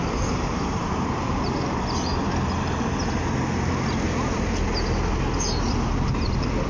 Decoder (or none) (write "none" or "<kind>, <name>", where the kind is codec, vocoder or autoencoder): none